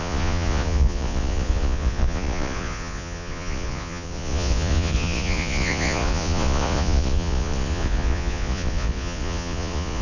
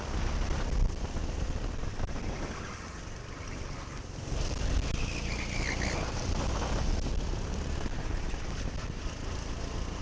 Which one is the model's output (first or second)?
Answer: first